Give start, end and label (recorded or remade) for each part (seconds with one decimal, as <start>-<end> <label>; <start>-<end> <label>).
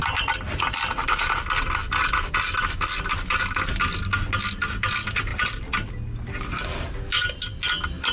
0.0-5.3 recorded; 5.3-5.9 remade; 5.9-8.1 recorded